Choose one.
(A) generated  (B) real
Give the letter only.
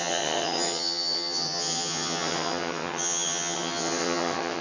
A